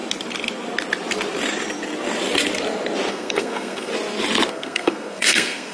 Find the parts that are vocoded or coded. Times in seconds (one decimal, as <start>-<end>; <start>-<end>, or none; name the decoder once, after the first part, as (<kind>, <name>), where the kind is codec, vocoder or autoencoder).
3.1-3.9 (codec, SNAC); 4.5-5.7